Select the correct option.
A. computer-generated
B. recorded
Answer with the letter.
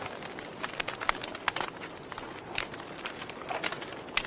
B